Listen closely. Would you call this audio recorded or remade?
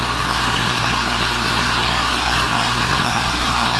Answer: remade